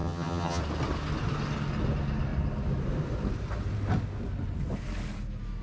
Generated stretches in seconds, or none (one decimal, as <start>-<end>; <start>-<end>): 0.0-0.6

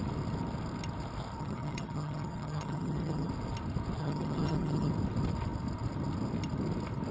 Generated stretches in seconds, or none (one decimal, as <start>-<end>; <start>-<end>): 1.4-3.3; 4.0-4.9